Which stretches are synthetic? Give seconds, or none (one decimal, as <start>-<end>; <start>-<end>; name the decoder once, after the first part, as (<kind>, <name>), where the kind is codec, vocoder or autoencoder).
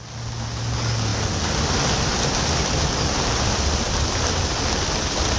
none